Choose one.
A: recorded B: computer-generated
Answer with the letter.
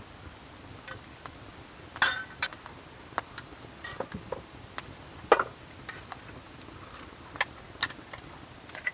A